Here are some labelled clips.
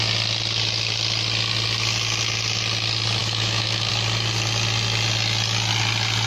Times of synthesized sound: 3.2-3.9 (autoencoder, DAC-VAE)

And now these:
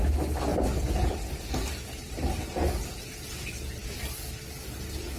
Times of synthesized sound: 2.0-2.9 (vocoder, BigVGAN v2)

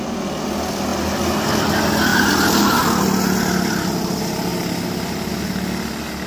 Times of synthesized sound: 2.1-2.8 (vocoder, BigVGAN v2)

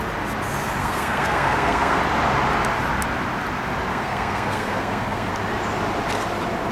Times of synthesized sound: 0.8-2.0 (codec, SNAC); 3.9-5.3

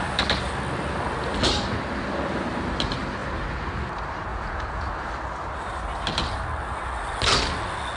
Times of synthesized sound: 4.3-4.9 (vocoder, Vocos)

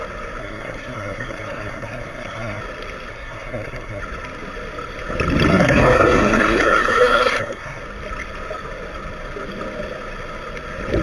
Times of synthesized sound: 0.4-2.6 (codec, SNAC); 3.1-4.0; 5.5-7.8

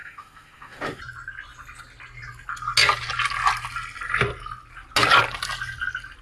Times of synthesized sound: 0.0-1.0 (autoencoder, DAC-VAE)